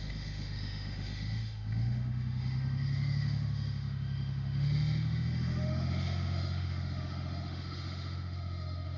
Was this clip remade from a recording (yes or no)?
yes